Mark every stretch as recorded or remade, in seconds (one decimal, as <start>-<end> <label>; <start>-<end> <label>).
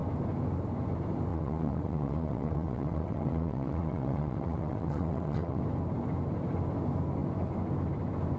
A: 0.0-1.3 recorded; 1.3-5.6 remade; 5.6-8.4 recorded